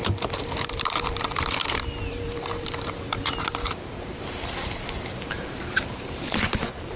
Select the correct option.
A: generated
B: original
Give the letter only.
A